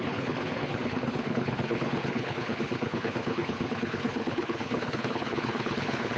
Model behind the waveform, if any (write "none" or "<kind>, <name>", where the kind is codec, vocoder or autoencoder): codec, HILCodec